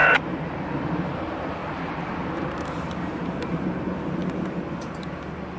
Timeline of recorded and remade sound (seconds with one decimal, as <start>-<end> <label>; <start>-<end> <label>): 0.0-1.6 recorded; 1.6-3.8 remade; 3.8-5.6 recorded